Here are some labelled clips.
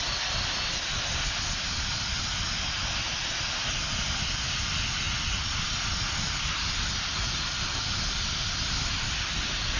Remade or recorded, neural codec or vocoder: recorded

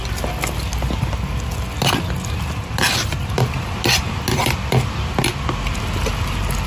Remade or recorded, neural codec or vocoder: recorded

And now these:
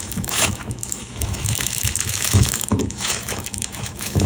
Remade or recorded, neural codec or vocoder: remade, autoencoder, DAC-VAE